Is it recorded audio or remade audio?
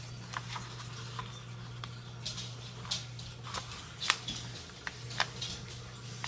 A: recorded